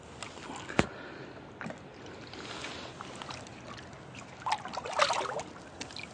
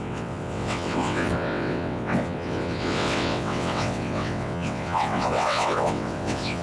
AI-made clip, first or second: second